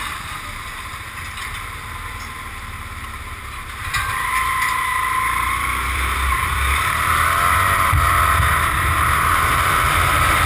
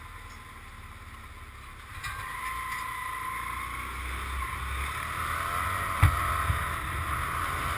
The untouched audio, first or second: second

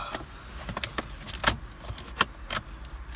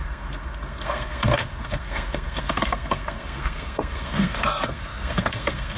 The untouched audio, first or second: first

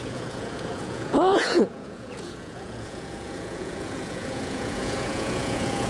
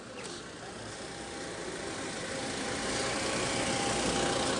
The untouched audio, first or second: second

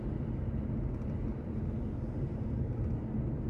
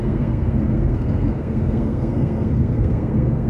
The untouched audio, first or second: first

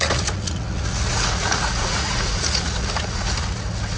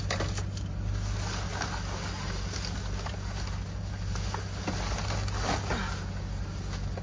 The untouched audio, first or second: second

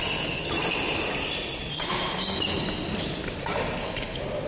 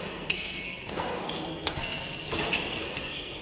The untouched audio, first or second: first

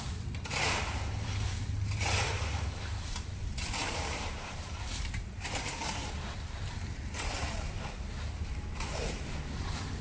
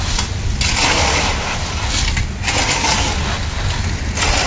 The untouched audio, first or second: second